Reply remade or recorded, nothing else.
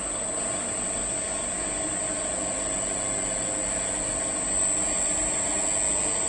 recorded